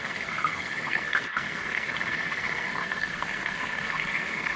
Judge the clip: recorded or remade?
remade